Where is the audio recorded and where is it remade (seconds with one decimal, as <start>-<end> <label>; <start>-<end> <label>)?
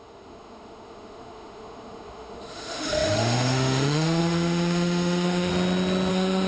0.0-5.5 remade; 5.5-6.1 recorded; 6.1-6.5 remade